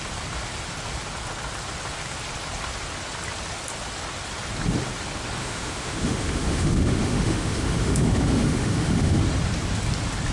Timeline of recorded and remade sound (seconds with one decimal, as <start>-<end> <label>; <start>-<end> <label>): 0.0-5.4 recorded; 5.4-9.2 remade; 9.2-10.3 recorded